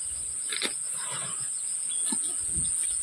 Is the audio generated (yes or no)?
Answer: no